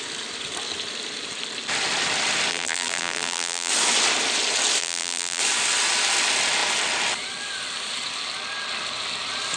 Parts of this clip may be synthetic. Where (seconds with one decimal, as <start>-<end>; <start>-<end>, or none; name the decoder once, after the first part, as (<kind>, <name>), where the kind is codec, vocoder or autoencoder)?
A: 2.5-3.7 (vocoder, BigVGAN v2); 4.8-5.4